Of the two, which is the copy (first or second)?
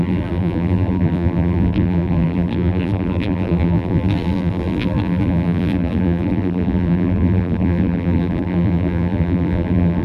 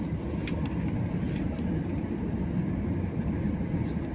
first